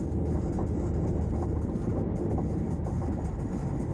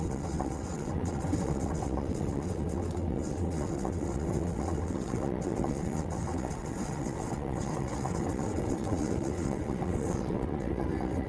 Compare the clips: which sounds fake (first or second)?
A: second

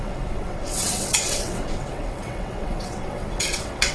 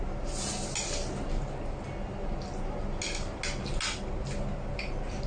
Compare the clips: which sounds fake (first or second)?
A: first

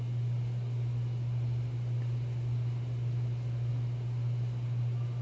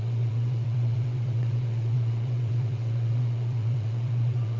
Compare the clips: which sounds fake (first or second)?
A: second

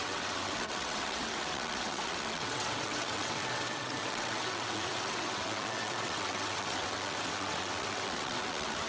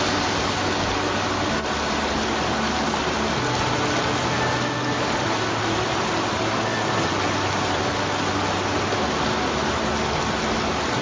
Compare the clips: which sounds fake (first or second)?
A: first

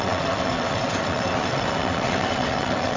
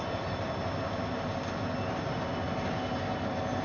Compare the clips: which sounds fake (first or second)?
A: first